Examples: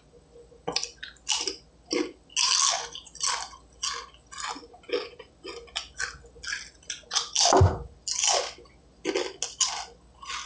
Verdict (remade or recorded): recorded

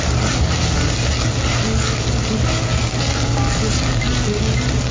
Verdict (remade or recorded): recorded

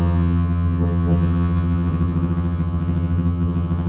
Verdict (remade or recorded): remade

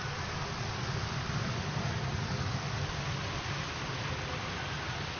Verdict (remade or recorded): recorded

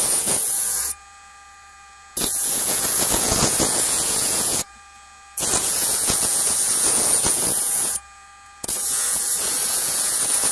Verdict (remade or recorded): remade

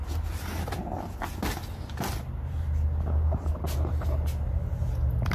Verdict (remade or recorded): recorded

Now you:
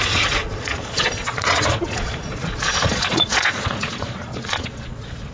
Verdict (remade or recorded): remade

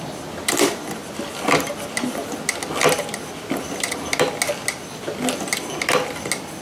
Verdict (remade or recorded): recorded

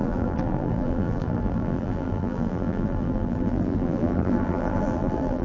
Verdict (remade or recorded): remade